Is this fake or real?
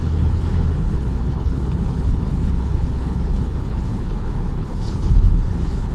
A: fake